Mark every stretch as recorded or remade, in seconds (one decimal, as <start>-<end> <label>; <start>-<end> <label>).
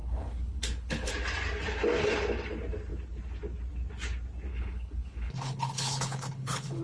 0.0-1.1 remade; 1.1-4.5 recorded; 4.5-6.8 remade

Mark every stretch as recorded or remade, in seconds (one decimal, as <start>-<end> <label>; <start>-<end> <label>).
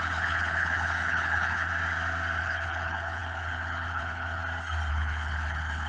0.0-1.7 remade; 1.7-2.4 recorded; 2.4-4.4 remade; 4.4-4.9 recorded; 4.9-5.9 remade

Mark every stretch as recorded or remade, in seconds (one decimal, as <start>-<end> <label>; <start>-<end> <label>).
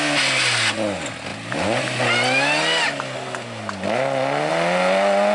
0.0-5.3 recorded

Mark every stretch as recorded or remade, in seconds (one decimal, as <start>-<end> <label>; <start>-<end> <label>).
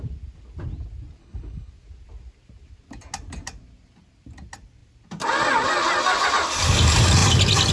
0.0-1.2 recorded; 1.2-1.7 remade; 1.7-7.7 recorded